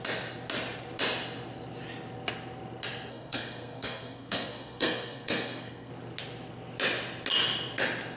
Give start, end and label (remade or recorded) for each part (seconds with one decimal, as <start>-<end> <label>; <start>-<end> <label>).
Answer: 0.0-3.1 recorded; 3.1-5.9 remade; 5.9-8.2 recorded